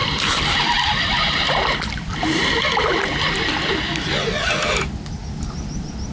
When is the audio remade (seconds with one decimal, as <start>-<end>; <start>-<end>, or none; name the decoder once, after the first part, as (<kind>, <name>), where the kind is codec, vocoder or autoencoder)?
none